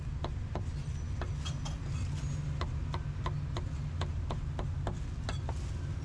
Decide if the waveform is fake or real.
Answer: real